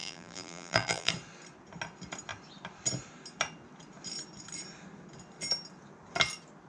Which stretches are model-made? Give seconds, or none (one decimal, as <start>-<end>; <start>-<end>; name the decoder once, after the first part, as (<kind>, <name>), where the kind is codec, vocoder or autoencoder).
0.0-1.1 (vocoder, BigVGAN v2)